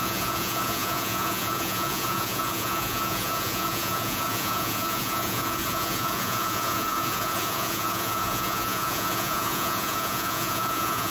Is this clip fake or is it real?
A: fake